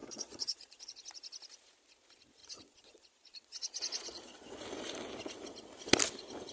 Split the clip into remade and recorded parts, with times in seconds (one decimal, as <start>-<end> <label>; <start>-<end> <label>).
0.0-0.8 remade; 0.8-2.4 recorded; 2.4-4.6 remade; 4.6-6.5 recorded